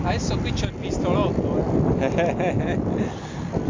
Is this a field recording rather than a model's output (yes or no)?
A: yes